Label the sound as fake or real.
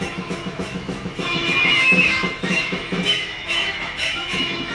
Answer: fake